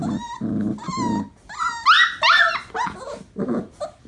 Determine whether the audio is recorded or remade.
recorded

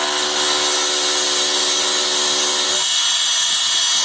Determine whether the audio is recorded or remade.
recorded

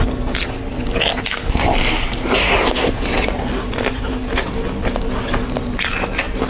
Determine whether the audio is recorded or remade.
recorded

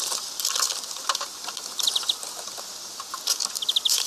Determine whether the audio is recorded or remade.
recorded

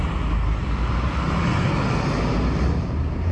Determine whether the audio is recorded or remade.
recorded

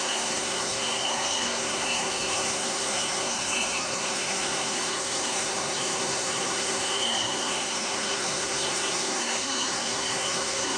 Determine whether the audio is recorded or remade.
remade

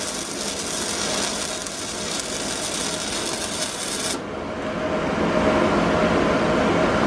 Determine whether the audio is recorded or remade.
recorded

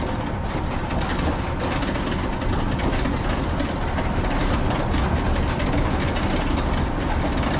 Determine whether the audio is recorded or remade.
recorded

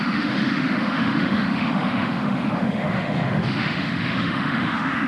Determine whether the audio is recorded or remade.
remade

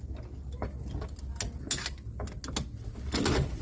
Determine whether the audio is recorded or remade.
recorded